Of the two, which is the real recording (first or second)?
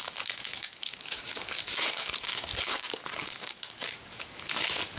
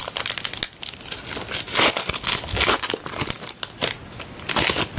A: second